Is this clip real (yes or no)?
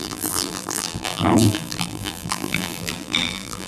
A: no